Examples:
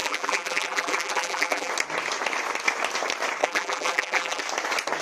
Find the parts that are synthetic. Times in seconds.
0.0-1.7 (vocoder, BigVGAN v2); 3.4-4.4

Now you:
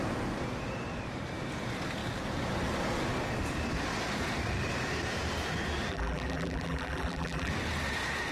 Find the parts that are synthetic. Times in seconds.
5.9-7.5 (vocoder, BigVGAN v2)

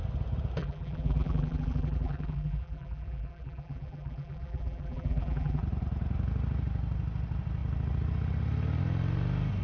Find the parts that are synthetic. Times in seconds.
0.6-5.6 (vocoder, BigVGAN v2)

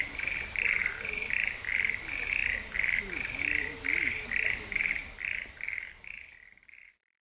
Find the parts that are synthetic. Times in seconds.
none

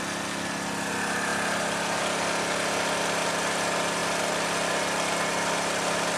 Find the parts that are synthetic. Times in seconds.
none